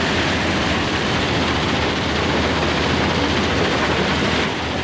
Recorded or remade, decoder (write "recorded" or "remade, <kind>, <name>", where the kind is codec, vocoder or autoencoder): recorded